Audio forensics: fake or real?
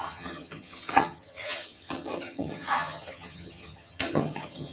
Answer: fake